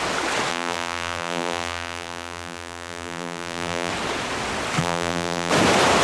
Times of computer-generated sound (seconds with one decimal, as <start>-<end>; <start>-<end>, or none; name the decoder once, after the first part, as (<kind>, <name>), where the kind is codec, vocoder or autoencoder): 0.5-3.9 (vocoder, BigVGAN v2); 4.8-5.5